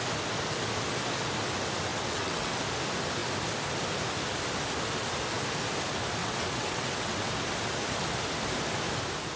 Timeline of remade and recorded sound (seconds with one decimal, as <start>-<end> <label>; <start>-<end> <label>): 0.0-1.9 recorded; 1.9-2.6 remade; 2.6-6.2 recorded; 6.2-7.3 remade; 7.3-9.4 recorded

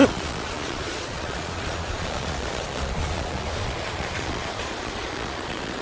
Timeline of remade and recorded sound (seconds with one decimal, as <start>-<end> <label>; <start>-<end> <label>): 0.0-5.8 remade

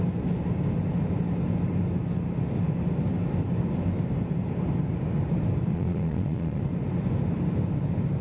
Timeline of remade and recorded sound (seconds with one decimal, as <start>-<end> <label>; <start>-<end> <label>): 0.0-5.7 recorded; 5.7-6.6 remade; 6.6-8.2 recorded